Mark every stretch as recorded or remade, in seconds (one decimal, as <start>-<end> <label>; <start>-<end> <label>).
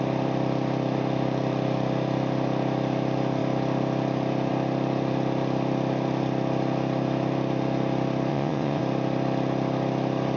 0.0-8.3 recorded; 8.3-8.8 remade; 8.8-10.4 recorded